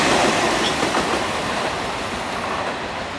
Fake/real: real